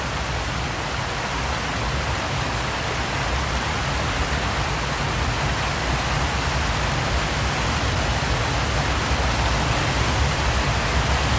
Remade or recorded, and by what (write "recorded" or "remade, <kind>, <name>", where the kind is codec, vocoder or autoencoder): recorded